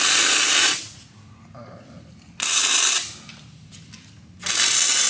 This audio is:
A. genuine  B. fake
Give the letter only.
A